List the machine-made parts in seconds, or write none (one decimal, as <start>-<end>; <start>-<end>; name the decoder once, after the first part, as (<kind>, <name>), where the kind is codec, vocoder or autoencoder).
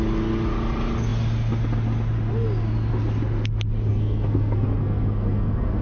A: 3.9-5.8 (codec, SNAC)